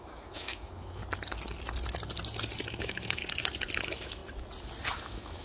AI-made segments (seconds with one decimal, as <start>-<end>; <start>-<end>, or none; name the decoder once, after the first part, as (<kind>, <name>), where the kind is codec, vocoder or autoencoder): 0.0-1.0 (autoencoder, DAC-VAE); 2.7-3.2; 3.8-4.2; 4.9-5.4